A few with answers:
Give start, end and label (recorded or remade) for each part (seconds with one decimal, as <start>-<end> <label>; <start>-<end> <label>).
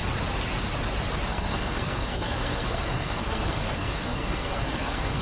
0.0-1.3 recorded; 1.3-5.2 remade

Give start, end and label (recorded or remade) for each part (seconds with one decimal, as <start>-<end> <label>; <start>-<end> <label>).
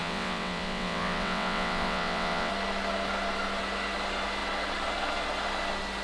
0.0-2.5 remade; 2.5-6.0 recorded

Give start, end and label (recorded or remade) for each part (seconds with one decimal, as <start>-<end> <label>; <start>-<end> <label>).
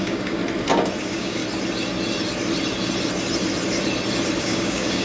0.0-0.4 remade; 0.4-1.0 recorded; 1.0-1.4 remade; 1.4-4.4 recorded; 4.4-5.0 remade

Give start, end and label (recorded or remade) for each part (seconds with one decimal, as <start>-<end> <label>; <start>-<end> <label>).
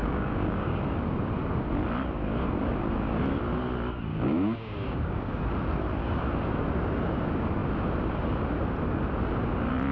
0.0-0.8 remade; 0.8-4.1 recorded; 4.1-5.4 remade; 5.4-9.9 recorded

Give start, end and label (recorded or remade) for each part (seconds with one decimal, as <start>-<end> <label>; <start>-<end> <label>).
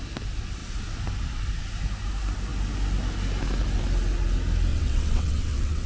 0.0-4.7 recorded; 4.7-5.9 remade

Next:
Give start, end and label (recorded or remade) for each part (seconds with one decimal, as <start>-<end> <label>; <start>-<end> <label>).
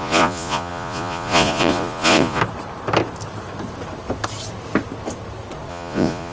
0.0-2.4 remade; 2.4-5.7 recorded; 5.7-6.3 remade